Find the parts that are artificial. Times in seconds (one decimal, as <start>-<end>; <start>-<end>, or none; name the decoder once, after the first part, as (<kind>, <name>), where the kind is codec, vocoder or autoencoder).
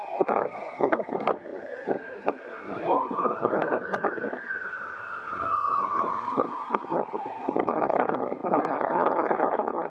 0.0-9.9 (codec, SNAC)